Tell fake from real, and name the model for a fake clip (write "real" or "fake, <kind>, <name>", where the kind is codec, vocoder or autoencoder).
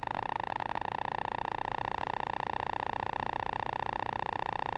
real